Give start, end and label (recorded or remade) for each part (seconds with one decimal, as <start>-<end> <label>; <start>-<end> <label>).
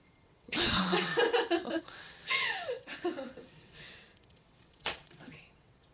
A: 0.0-1.1 remade; 1.1-1.8 recorded; 1.8-5.9 remade